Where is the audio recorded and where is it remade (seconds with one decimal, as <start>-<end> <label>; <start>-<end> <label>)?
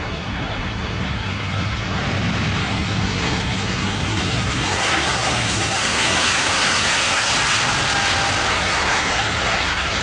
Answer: 0.0-2.0 remade; 2.0-2.6 recorded; 2.6-7.3 remade; 7.3-8.5 recorded; 8.5-10.0 remade